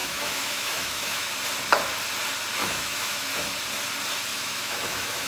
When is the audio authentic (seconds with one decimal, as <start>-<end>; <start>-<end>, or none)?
1.3-2.6; 3.3-4.3